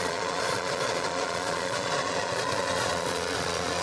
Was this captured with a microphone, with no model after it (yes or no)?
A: no